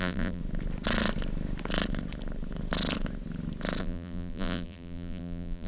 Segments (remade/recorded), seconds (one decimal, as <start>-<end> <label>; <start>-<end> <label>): 0.0-0.4 remade; 0.4-3.8 recorded; 3.8-5.7 remade